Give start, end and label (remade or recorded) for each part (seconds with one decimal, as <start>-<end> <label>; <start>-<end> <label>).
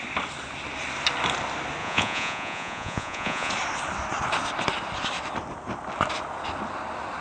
0.0-1.8 recorded; 1.8-3.5 remade; 3.5-7.2 recorded